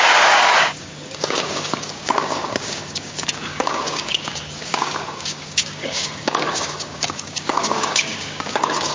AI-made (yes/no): yes